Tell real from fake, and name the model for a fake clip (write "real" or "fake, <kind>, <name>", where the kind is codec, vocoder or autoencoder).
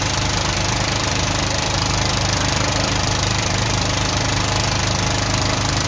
fake, vocoder, BigVGAN v2